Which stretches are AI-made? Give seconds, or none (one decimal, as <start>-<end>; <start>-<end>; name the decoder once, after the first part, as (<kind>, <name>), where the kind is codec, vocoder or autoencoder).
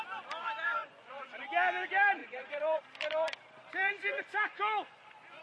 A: 0.8-1.5 (vocoder, Vocos); 2.2-2.8; 3.8-5.4